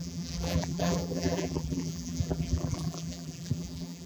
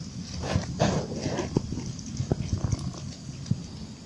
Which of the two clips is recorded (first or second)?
second